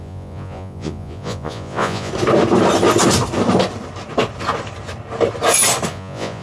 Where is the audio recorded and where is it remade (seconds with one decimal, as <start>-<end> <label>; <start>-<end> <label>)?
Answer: 0.0-2.1 remade; 2.1-5.9 recorded; 5.9-6.4 remade